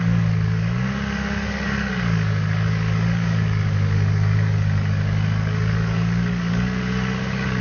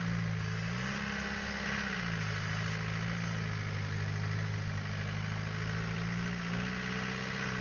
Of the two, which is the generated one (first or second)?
first